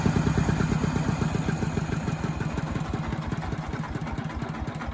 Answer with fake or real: real